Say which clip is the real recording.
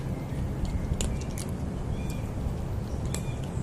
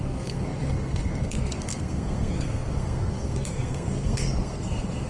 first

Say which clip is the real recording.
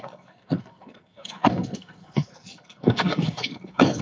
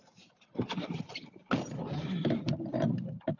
second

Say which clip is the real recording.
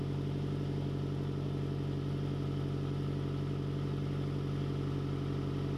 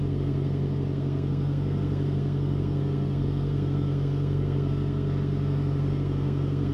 first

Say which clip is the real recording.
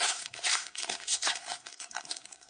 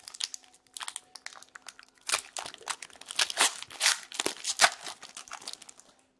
second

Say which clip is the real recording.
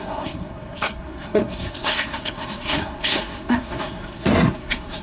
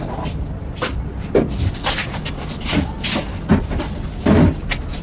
second